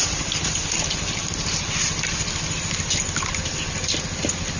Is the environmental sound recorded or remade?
recorded